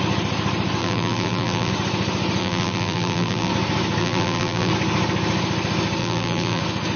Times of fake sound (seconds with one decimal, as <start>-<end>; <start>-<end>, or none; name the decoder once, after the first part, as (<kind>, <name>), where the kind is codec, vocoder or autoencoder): 0.8-1.7 (vocoder, BigVGAN v2); 2.4-3.5; 4.0-4.7; 6.0-6.6